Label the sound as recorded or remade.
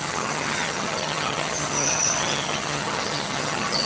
remade